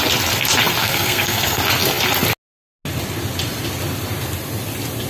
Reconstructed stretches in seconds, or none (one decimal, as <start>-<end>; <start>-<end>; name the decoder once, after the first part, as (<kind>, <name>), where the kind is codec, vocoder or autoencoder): 0.8-1.6 (codec, SNAC)